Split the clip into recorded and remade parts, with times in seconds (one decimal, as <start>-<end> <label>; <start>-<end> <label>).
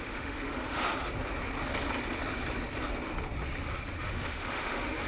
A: 0.0-0.9 remade; 0.9-4.0 recorded; 4.0-5.1 remade